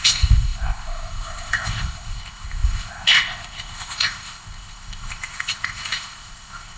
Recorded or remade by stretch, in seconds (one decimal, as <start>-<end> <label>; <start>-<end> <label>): 0.0-6.8 remade